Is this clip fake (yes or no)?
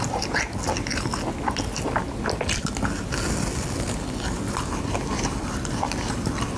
no